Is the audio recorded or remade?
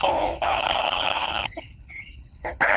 remade